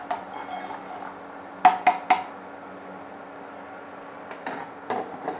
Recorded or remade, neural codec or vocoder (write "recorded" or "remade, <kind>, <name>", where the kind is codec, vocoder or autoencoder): recorded